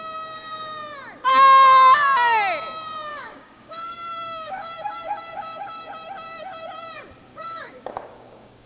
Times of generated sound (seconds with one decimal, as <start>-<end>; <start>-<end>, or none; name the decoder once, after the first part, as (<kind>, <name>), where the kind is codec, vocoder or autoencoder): 3.1-5.9 (codec, DAC); 7.3-8.7